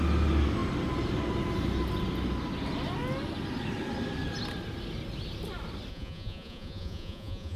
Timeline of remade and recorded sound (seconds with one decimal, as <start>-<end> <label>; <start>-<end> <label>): 0.0-5.9 recorded; 5.9-7.6 remade